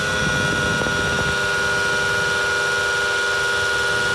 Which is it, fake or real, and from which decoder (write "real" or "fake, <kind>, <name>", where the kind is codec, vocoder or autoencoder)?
real